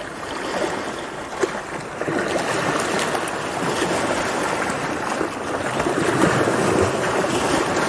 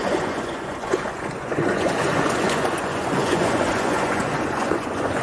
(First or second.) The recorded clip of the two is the first